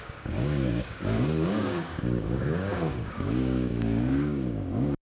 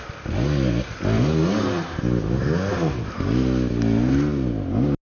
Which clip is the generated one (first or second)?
first